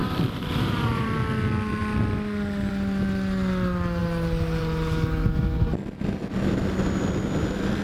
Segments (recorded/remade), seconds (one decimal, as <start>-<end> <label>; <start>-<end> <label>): 0.0-1.1 remade; 1.1-7.8 recorded